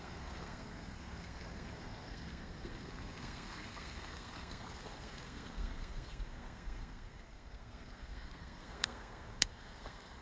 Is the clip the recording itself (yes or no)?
no